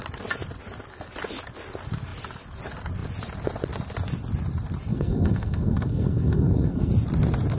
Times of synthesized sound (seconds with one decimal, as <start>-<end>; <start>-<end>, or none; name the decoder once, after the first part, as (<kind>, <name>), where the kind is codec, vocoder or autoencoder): 4.9-6.9 (codec, SNAC)